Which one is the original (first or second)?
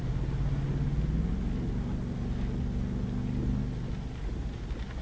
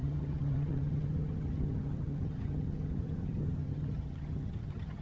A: first